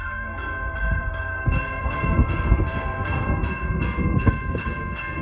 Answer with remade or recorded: remade